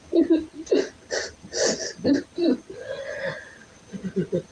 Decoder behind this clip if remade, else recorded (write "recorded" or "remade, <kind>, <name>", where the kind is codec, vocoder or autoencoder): recorded